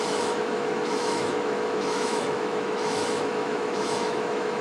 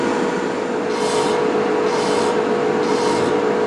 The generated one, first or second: first